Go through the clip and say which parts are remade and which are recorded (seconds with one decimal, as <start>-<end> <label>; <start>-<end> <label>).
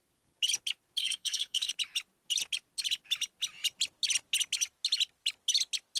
0.0-1.0 recorded; 1.0-1.7 remade; 1.7-6.0 recorded